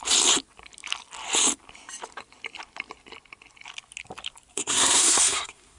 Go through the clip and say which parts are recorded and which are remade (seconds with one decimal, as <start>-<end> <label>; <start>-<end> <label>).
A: 0.0-4.5 recorded; 4.5-5.8 remade